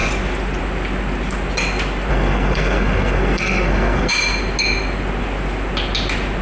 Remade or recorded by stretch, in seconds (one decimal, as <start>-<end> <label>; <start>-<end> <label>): 0.0-2.1 recorded; 2.1-4.1 remade; 4.1-6.4 recorded